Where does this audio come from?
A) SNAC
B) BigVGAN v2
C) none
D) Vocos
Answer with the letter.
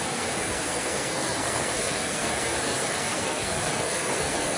A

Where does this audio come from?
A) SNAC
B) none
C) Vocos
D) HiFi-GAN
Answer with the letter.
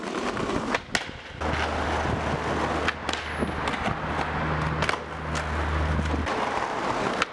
B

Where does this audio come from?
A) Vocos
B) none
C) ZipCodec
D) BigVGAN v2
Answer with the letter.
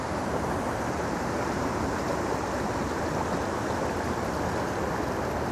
B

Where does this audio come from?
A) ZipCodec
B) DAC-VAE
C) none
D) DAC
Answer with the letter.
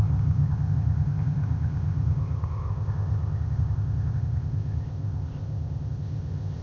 A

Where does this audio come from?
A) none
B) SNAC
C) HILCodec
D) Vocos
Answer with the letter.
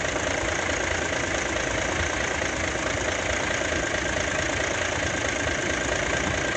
A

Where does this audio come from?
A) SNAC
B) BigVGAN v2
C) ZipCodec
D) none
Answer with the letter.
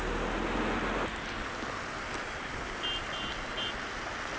D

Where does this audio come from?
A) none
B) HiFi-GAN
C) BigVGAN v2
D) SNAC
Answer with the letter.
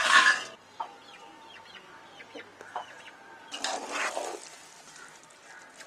A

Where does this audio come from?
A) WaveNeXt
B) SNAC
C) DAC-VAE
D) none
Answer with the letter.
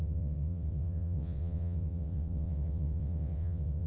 A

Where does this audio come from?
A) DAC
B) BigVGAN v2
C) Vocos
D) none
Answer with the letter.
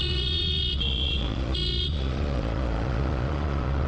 C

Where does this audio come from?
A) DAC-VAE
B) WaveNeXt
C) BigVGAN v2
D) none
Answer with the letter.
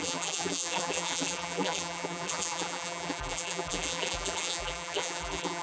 C